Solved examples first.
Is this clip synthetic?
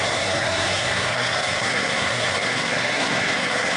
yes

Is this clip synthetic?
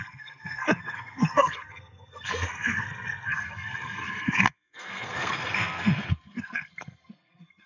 yes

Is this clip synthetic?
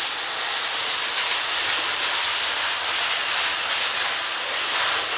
no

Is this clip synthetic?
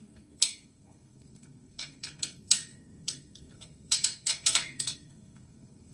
yes